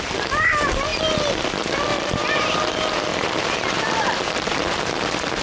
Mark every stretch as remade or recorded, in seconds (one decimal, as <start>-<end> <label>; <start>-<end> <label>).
0.0-1.9 recorded; 1.9-2.7 remade; 2.7-3.1 recorded; 3.1-5.0 remade; 5.0-5.4 recorded